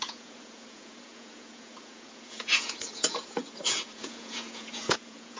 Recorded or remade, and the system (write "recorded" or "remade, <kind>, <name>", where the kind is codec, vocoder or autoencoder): remade, vocoder, Vocos